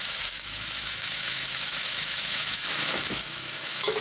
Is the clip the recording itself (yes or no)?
no